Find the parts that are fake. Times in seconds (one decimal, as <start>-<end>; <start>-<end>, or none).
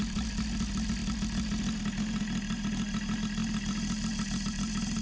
none